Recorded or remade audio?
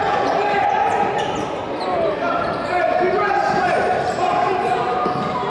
remade